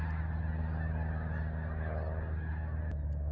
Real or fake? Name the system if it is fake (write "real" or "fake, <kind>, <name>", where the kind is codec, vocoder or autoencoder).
real